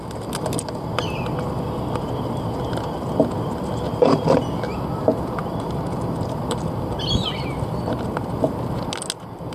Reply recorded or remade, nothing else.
recorded